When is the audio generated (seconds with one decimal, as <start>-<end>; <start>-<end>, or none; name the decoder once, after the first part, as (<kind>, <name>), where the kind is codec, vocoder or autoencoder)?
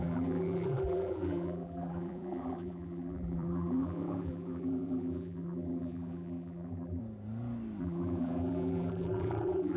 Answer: 0.0-7.0 (vocoder, BigVGAN v2); 7.8-9.8